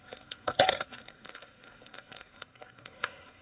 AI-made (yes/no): yes